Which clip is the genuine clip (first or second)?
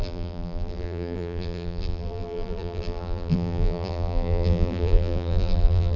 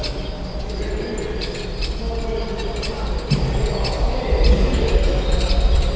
second